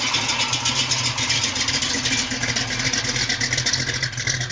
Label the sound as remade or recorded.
recorded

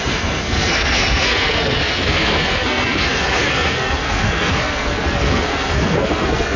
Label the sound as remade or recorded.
remade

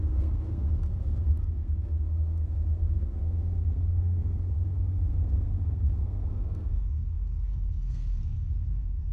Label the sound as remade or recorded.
remade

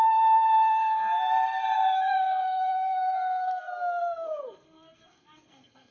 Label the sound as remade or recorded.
remade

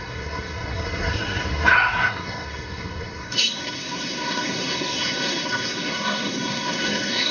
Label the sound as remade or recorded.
remade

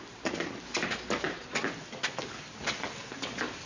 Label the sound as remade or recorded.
recorded